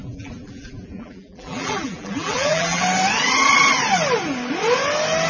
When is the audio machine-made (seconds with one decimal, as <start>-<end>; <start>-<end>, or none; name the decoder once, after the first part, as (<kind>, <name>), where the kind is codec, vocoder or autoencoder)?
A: 0.0-2.8 (vocoder, BigVGAN v2)